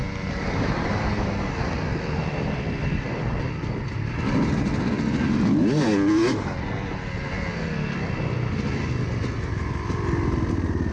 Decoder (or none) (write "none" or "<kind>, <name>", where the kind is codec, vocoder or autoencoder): none